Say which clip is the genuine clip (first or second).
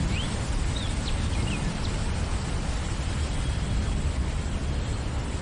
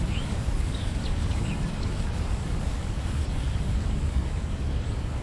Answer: first